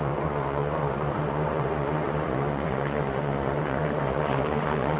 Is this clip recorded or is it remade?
remade